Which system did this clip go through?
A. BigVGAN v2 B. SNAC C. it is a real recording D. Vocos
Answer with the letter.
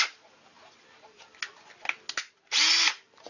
C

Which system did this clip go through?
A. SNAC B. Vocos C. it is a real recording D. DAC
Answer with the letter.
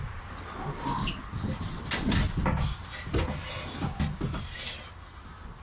C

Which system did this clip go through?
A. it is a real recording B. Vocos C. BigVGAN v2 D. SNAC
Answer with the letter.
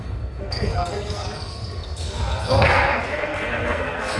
D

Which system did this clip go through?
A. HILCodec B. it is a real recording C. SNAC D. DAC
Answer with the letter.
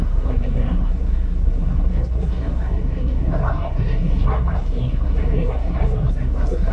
C